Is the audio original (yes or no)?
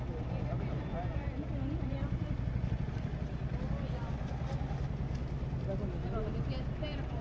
yes